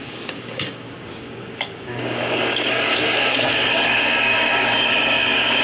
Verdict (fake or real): fake